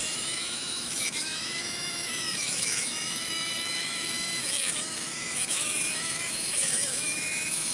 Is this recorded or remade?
remade